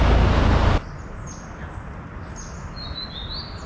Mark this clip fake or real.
real